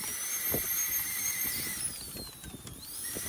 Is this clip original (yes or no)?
yes